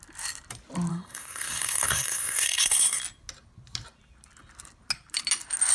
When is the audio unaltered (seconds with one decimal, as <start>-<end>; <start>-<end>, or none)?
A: 0.0-0.9; 3.0-5.7